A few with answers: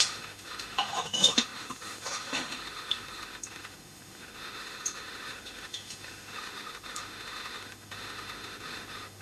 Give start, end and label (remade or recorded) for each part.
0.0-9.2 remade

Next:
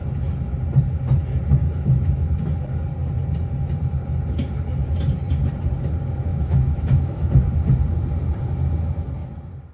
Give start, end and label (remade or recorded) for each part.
0.0-1.6 recorded; 1.6-2.4 remade; 2.4-6.3 recorded; 6.3-7.4 remade; 7.4-9.7 recorded

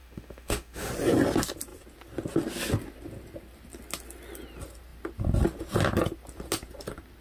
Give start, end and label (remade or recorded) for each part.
0.0-0.9 remade; 0.9-7.2 recorded

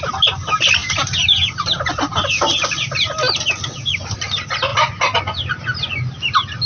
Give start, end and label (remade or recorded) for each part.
0.0-6.7 recorded

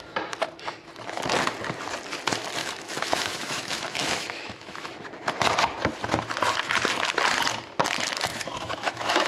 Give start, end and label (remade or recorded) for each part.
0.0-2.6 recorded; 2.6-5.0 remade; 5.0-8.3 recorded; 8.3-9.3 remade